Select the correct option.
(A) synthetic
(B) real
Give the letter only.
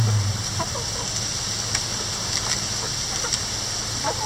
B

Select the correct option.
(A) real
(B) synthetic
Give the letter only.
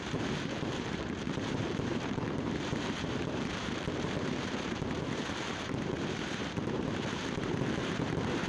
B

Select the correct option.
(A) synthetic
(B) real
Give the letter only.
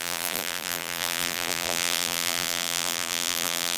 A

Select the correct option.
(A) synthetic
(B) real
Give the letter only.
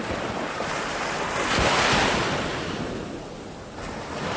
B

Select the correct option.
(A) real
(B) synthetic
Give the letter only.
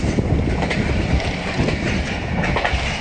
A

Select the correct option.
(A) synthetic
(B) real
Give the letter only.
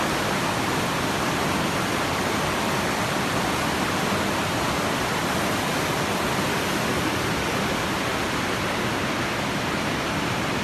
B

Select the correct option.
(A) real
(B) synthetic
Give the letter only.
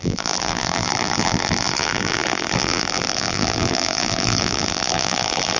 B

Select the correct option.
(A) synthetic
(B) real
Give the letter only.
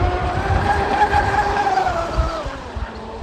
A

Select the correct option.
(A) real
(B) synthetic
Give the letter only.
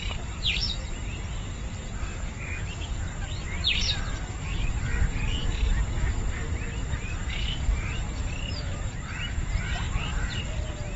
B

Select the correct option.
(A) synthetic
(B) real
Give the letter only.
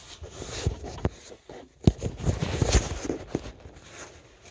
B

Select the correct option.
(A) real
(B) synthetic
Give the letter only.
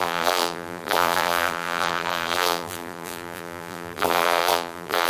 B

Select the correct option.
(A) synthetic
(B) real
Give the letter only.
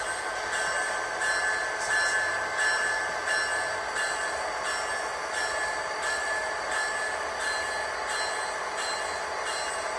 B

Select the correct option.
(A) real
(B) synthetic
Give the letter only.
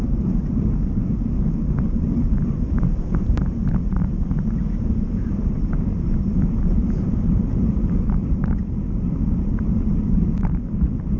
B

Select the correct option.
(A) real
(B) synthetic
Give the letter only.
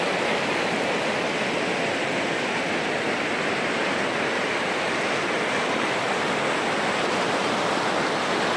A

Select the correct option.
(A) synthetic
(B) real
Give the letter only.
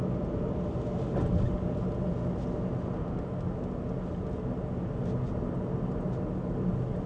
B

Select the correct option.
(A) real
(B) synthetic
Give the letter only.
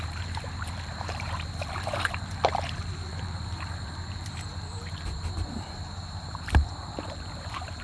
B